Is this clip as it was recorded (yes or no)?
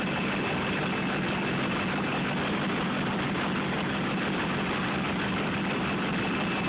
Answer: yes